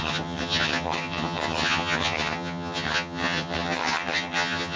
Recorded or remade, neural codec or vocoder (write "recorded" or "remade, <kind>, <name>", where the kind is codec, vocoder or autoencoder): remade, vocoder, HiFi-GAN